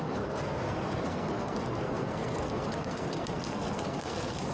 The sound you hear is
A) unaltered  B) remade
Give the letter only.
B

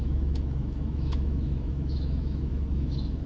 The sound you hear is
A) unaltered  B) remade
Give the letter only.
B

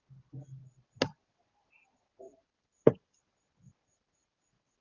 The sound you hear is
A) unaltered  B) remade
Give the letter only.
A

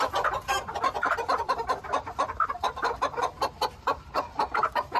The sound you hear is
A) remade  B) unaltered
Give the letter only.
A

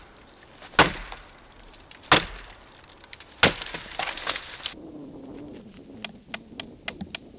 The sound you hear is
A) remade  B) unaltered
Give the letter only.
B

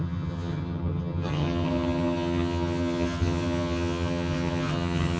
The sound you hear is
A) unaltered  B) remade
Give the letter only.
B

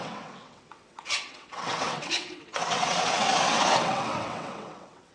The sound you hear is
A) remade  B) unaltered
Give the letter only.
A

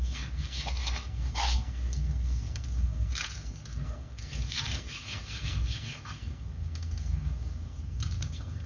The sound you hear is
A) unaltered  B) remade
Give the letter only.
B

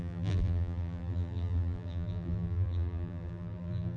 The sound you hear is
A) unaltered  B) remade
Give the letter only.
B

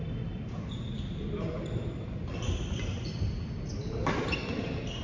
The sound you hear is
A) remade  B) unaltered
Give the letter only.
B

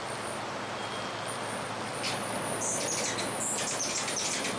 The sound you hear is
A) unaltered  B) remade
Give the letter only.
A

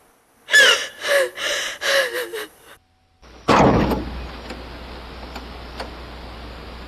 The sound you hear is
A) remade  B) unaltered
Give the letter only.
B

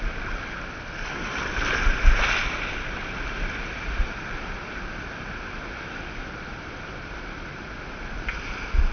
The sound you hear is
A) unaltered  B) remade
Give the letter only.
A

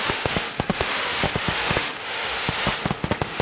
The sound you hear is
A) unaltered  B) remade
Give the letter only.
B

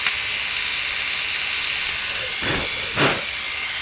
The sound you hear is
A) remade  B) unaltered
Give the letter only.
B